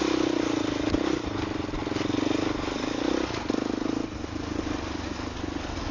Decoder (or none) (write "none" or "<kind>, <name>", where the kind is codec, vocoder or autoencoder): none